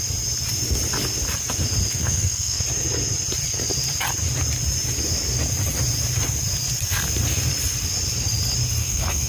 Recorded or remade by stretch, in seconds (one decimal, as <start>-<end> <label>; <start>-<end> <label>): 0.0-2.0 recorded; 2.0-2.6 remade; 2.6-8.8 recorded; 8.8-9.3 remade

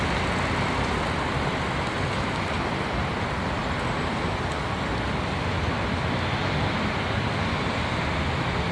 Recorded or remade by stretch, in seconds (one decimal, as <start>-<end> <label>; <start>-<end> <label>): 0.0-8.7 recorded

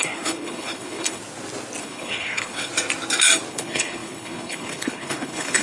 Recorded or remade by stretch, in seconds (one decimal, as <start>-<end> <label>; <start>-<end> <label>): 0.0-1.2 remade; 1.2-1.8 recorded; 1.8-2.7 remade; 2.7-3.5 recorded; 3.5-5.6 remade

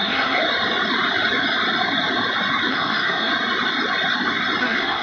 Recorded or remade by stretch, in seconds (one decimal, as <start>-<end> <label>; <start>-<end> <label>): 0.0-0.4 remade; 0.4-2.7 recorded; 2.7-3.3 remade; 3.3-4.6 recorded; 4.6-5.0 remade